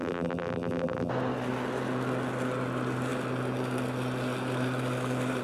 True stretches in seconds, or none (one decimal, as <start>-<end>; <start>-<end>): 1.1-5.4